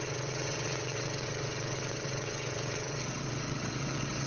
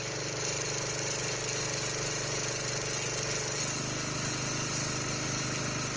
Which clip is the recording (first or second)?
second